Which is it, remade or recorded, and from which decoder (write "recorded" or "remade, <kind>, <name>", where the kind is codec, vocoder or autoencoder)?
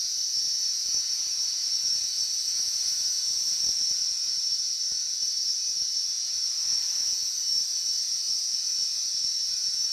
remade, vocoder, Vocos